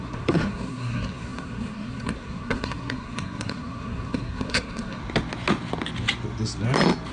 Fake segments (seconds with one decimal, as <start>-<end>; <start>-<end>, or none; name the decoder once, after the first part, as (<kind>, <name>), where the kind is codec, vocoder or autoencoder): 0.0-5.0 (codec, SNAC)

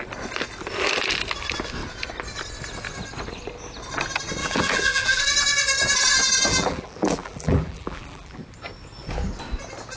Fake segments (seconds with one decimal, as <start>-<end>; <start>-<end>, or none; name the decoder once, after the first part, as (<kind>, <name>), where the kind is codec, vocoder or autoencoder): 4.4-5.2 (vocoder, BigVGAN v2); 6.5-8.4